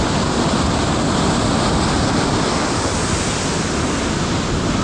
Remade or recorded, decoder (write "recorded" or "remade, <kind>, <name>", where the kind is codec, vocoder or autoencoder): recorded